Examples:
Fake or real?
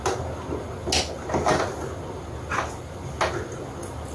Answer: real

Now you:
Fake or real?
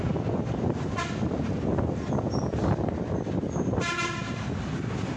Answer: real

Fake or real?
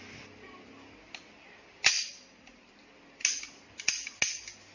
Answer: real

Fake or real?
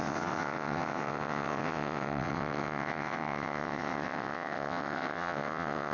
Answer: fake